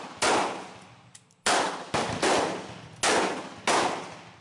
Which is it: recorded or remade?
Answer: recorded